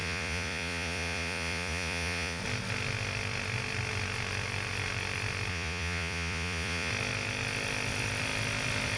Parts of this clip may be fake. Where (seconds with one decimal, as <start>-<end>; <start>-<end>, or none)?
0.0-2.4; 5.5-6.9